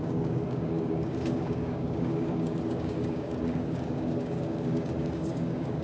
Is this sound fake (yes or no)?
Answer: yes